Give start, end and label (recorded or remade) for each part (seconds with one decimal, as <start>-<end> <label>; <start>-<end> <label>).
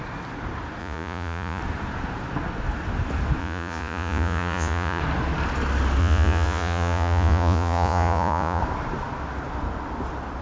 0.0-0.8 recorded; 0.8-1.6 remade; 1.6-3.4 recorded; 3.4-5.0 remade; 5.0-6.0 recorded; 6.0-8.6 remade; 8.6-10.4 recorded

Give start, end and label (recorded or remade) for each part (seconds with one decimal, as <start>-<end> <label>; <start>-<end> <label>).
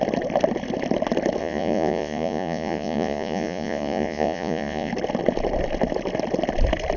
0.0-1.4 recorded; 1.4-4.9 remade; 4.9-7.0 recorded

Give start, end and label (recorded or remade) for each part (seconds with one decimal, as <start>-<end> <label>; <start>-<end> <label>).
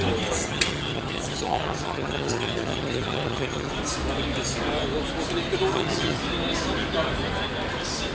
0.0-0.4 recorded; 0.4-3.7 remade; 3.7-5.7 recorded; 5.7-6.2 remade; 6.2-8.1 recorded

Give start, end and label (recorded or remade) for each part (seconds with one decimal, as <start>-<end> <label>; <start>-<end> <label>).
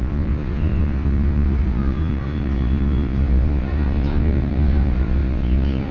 0.0-5.9 remade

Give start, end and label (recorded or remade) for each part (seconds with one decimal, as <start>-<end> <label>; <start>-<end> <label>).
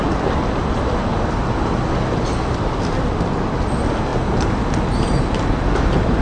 0.0-6.2 recorded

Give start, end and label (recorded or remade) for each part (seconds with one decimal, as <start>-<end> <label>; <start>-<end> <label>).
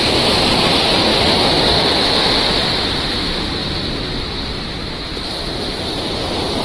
0.0-1.1 recorded; 1.1-1.6 remade; 1.6-6.6 recorded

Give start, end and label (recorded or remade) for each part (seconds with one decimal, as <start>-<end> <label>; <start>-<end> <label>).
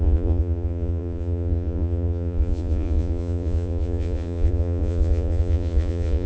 0.0-6.3 remade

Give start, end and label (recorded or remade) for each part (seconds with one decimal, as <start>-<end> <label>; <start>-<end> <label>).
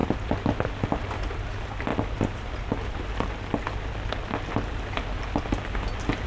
0.0-6.3 recorded